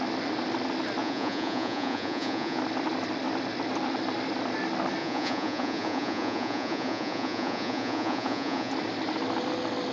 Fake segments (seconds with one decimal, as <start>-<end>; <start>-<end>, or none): 1.0-2.6; 5.0-8.7